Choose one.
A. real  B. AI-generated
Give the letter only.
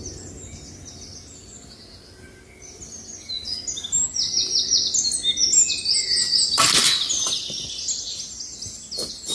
A